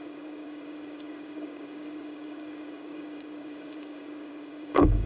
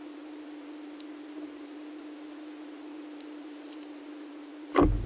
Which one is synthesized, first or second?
first